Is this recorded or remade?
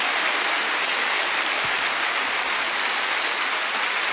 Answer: recorded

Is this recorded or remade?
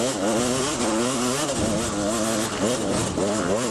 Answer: recorded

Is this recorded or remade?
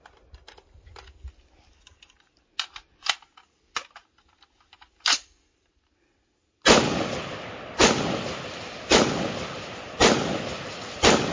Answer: recorded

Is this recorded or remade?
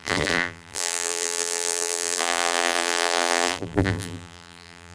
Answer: remade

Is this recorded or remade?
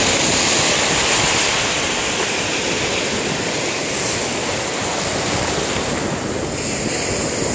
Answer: recorded